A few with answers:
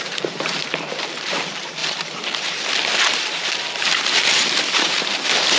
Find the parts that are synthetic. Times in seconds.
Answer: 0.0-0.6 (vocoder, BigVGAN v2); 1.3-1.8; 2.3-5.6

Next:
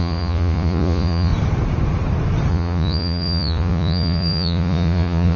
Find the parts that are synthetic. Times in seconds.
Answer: 0.0-1.3 (vocoder, Vocos); 2.5-5.4

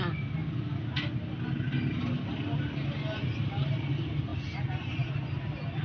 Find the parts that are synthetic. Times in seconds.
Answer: none

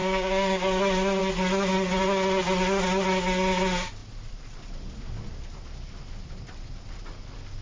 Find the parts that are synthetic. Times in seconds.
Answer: 0.0-0.6 (codec, DAC)

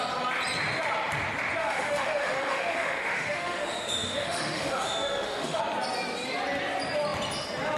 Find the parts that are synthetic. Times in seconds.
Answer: 1.6-5.6 (autoencoder, DAC-VAE)

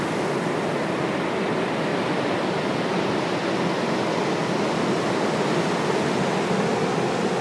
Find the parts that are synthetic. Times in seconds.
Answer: none

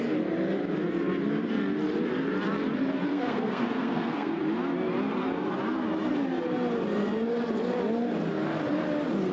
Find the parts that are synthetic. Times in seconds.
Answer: 3.1-4.4 (codec, SNAC)